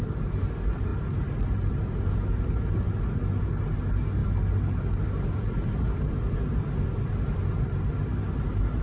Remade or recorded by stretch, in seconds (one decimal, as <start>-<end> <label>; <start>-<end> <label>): 0.0-8.8 recorded